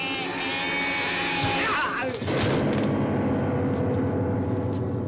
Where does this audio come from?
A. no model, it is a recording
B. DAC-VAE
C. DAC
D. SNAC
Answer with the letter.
A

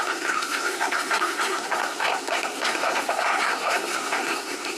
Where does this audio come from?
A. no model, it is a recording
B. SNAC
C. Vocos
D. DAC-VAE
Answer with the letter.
B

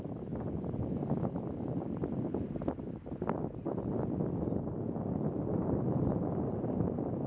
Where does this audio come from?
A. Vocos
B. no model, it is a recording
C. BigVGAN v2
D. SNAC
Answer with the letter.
B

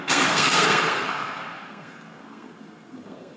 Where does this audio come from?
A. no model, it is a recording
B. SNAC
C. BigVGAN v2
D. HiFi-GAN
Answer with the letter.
B